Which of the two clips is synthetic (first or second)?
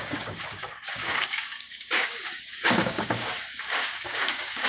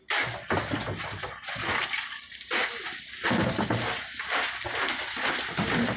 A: first